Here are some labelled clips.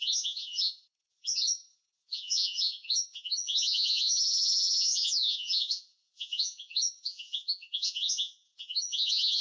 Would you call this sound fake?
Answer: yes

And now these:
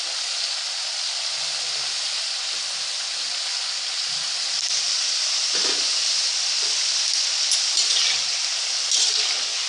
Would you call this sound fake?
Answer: no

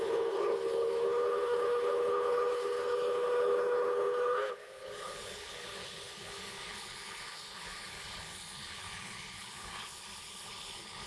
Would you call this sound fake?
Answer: yes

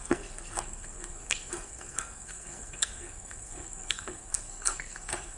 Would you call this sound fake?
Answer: yes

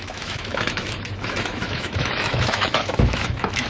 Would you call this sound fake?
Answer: yes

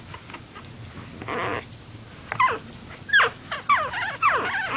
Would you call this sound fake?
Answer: no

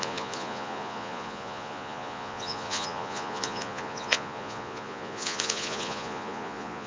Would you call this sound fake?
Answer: yes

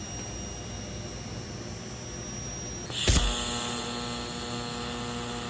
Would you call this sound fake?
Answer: no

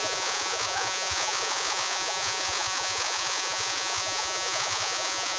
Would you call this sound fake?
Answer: yes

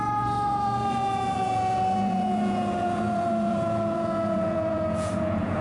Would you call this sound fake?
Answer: yes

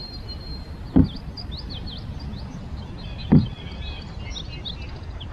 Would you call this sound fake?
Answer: no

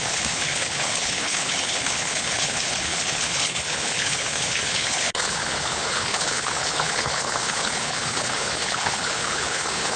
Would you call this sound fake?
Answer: yes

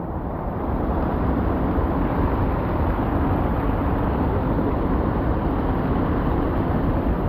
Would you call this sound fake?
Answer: no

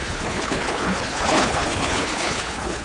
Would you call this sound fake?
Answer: yes